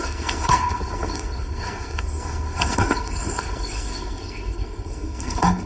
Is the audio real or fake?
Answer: fake